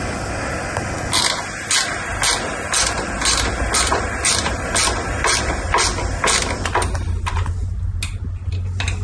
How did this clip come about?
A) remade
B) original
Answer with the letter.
B